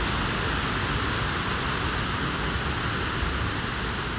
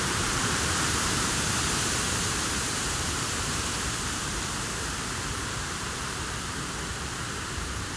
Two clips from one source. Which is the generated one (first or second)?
second